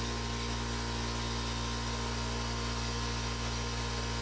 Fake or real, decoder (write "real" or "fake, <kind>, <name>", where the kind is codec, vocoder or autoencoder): real